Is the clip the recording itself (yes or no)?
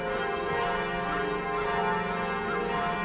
yes